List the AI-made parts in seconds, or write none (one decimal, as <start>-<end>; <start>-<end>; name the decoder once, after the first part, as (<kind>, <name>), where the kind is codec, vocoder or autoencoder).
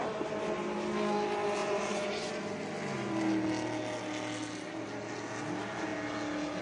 1.6-2.3 (vocoder, Vocos)